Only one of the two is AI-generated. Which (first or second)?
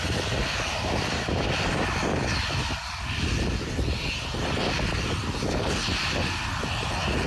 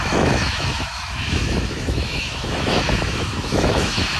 second